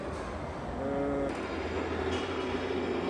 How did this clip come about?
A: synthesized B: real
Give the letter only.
B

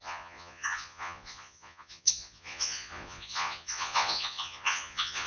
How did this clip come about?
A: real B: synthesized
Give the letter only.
B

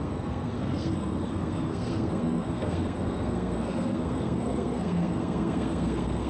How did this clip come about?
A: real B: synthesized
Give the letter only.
B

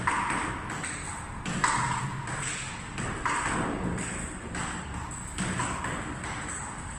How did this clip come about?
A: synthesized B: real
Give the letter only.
B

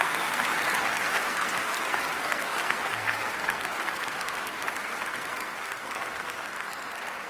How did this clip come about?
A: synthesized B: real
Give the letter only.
A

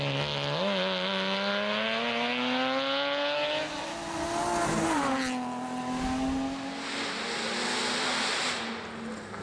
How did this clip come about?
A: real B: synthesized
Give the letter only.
A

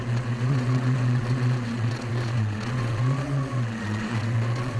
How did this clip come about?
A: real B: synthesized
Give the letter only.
B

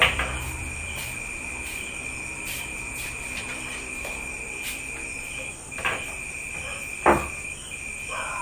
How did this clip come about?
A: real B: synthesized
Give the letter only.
B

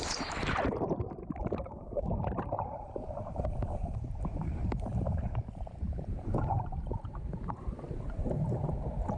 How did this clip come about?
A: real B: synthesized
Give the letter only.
B